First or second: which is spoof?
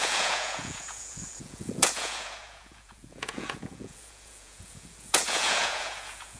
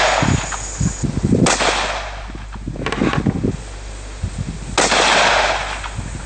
first